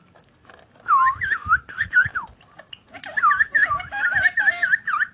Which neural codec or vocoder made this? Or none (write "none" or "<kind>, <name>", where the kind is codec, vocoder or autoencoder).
vocoder, BigVGAN v2